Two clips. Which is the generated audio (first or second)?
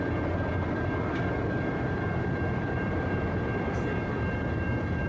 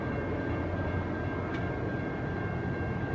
first